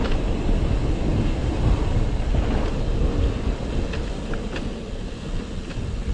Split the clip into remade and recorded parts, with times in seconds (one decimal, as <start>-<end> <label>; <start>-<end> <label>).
0.0-6.1 recorded